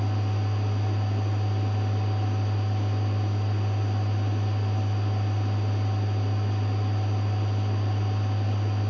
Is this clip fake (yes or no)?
no